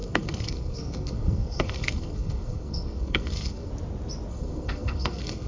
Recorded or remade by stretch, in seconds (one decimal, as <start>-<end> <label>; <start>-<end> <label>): 0.0-3.7 remade; 3.7-4.3 recorded; 4.3-5.5 remade